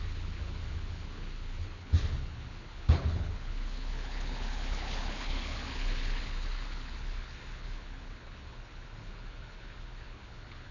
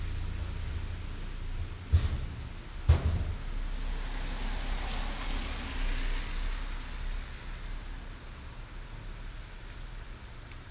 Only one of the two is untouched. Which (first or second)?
second